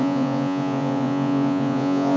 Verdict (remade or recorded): remade